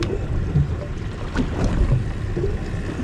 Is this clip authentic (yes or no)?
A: yes